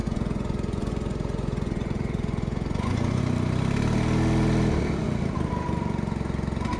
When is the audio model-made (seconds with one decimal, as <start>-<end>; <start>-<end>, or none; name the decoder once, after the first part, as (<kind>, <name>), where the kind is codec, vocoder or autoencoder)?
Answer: 0.0-3.2 (vocoder, Vocos)